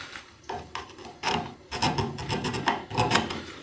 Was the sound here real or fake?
real